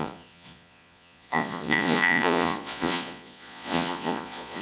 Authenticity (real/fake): fake